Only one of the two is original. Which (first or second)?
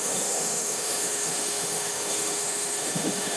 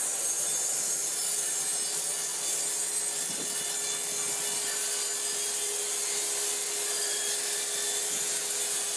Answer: second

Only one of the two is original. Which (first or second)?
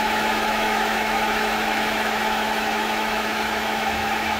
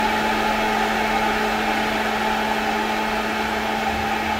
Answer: second